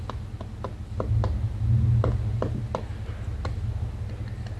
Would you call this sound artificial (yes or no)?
no